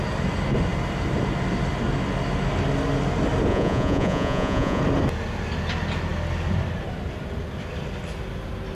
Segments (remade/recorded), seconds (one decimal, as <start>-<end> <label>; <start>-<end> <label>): 0.0-3.5 recorded; 3.5-4.8 remade; 4.8-8.7 recorded